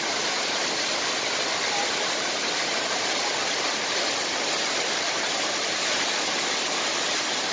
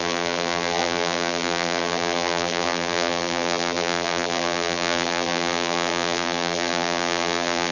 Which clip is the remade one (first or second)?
second